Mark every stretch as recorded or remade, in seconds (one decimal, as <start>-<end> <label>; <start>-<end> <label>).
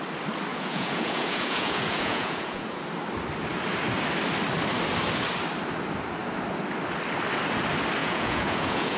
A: 0.0-0.5 recorded; 0.5-2.8 remade; 2.8-8.0 recorded; 8.0-9.0 remade